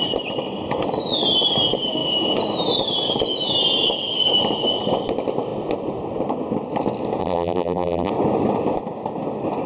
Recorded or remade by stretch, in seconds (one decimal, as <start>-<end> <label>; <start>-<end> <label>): 0.0-7.2 recorded; 7.2-8.1 remade; 8.1-9.7 recorded